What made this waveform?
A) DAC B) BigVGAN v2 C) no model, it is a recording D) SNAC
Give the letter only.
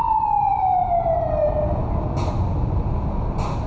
C